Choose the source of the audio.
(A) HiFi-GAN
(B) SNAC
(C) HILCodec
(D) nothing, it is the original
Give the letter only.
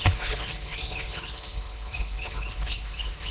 C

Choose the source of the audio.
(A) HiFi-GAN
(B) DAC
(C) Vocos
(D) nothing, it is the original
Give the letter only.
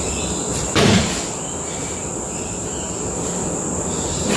D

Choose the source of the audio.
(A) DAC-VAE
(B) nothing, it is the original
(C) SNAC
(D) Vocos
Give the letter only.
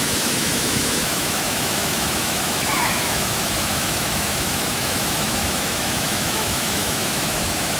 A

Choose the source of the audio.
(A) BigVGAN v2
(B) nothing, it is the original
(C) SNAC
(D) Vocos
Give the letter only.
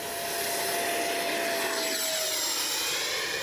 B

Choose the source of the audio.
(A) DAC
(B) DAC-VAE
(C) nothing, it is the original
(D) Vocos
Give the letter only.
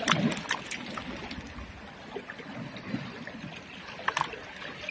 C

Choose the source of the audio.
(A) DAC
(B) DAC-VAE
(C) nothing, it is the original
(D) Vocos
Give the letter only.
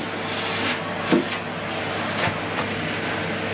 C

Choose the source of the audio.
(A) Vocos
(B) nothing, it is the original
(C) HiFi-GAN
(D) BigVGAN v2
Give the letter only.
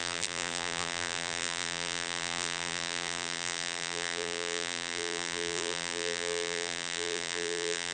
D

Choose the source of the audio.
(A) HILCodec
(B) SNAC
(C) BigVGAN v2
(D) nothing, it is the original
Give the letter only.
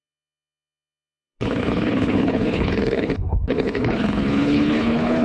A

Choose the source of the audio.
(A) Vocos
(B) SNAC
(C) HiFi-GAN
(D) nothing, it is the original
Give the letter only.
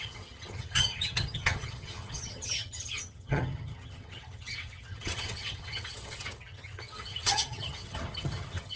C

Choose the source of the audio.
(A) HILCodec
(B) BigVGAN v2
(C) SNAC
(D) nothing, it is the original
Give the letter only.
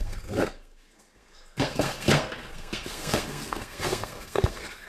C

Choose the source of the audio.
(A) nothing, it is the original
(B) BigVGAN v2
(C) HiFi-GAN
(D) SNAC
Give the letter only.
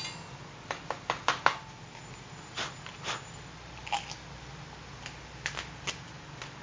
A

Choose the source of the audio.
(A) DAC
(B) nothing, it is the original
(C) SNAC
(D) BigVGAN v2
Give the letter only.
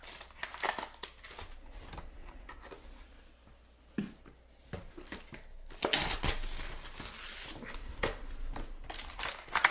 B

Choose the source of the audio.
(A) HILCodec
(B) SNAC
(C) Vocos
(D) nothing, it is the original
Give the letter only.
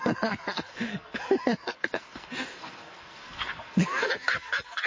B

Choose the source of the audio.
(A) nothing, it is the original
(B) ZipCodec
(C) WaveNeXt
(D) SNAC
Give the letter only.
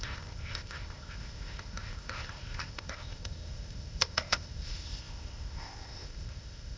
B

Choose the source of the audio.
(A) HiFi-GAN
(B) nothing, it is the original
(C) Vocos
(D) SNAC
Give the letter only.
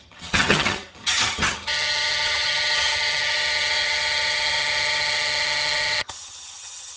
A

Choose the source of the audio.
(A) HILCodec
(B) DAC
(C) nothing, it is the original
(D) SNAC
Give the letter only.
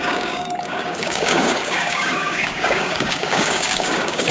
B